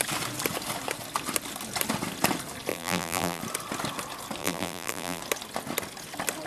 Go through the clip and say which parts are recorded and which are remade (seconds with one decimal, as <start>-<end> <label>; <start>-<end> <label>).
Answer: 0.0-2.7 recorded; 2.7-3.4 remade; 3.4-4.4 recorded; 4.4-5.2 remade; 5.2-6.5 recorded